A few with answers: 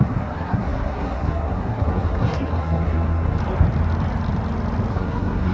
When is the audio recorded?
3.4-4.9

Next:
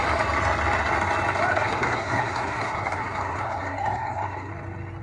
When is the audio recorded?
0.0-1.5; 4.5-5.0

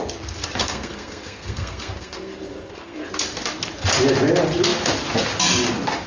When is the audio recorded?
0.0-0.6; 3.1-6.1